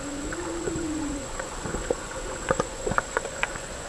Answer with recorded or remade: remade